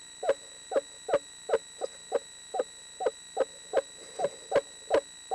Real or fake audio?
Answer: real